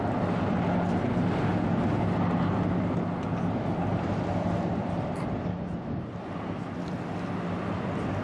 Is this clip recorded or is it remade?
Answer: recorded